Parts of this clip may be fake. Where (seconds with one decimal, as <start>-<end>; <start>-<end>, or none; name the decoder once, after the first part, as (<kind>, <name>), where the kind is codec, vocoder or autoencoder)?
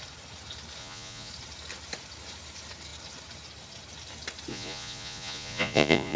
0.8-1.3 (vocoder, Vocos); 4.5-6.2